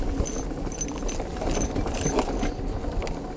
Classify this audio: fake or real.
real